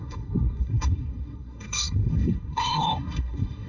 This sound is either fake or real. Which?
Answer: fake